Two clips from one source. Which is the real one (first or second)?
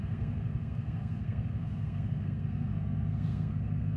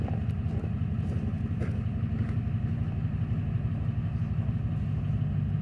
second